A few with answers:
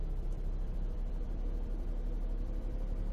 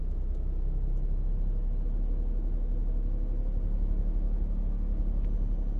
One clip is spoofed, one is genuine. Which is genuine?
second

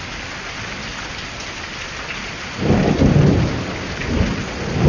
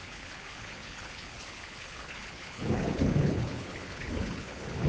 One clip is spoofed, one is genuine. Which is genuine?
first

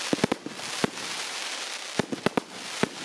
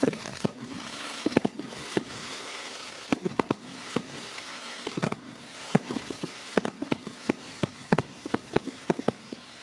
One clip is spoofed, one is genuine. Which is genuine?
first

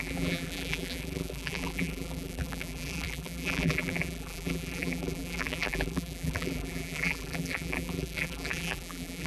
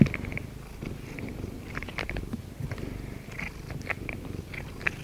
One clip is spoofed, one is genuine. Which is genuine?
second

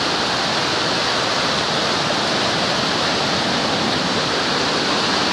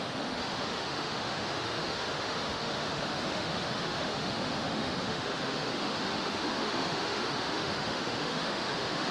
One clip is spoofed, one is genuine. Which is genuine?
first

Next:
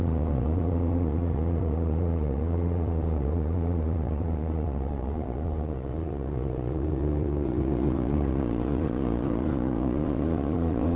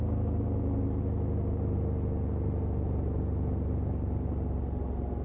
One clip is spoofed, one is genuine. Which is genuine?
second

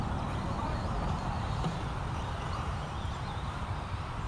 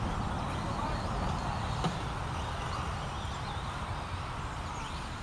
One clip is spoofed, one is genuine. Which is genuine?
second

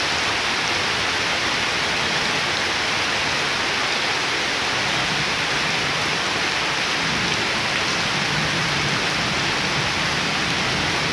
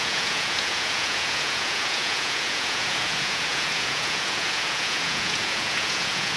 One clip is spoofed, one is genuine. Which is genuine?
first